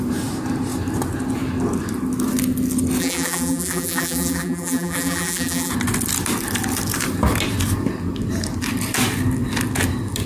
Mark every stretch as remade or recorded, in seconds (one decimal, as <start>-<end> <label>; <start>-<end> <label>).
0.0-3.0 recorded; 3.0-5.7 remade; 5.7-10.3 recorded